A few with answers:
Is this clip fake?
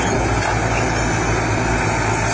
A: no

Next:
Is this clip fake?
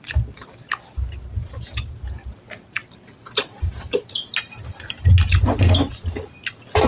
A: no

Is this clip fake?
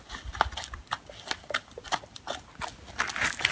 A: no